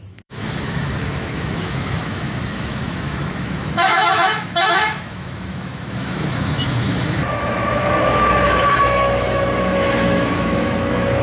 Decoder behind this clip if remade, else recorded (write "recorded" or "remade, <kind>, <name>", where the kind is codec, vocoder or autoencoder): remade, autoencoder, DAC-VAE